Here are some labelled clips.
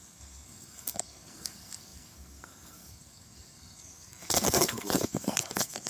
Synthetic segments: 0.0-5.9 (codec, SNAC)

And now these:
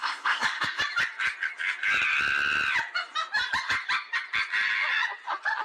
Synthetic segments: 0.0-0.8 (codec, SNAC)

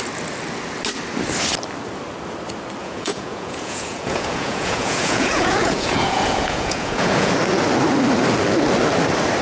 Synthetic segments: 2.8-7.3 (vocoder, Vocos)

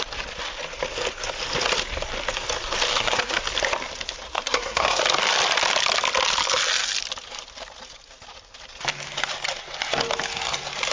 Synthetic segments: 2.9-3.4 (codec, SNAC); 4.3-5.0

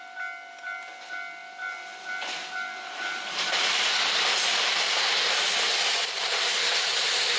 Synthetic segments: 1.4-5.8 (vocoder, BigVGAN v2)